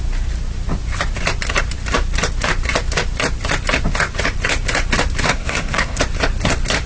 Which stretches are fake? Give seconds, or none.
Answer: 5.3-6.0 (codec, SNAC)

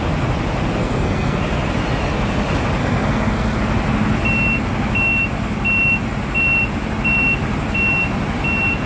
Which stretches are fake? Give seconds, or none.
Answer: 0.8-1.4 (codec, SNAC); 2.8-3.6

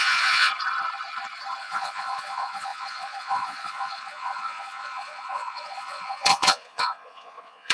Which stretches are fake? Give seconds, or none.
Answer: 0.0-0.5 (vocoder, Vocos); 1.6-7.7

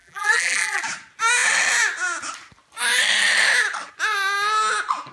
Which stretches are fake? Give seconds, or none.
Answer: 0.0-0.8 (vocoder, BigVGAN v2)

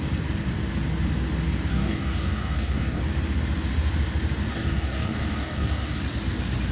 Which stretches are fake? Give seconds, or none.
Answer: 1.7-3.0 (codec, DAC); 4.5-6.0